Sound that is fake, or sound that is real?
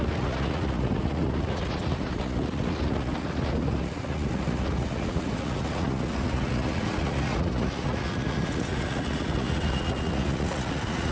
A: fake